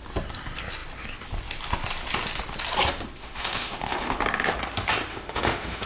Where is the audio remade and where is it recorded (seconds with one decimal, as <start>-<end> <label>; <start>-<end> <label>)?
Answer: 0.0-3.2 recorded; 3.2-4.2 remade; 4.2-5.1 recorded; 5.1-5.9 remade